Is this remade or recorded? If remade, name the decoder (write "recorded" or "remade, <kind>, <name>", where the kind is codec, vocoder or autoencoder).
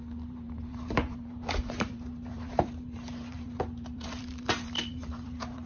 remade, vocoder, BigVGAN v2